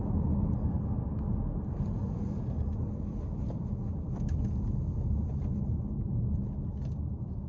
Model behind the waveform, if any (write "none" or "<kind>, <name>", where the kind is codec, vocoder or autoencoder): none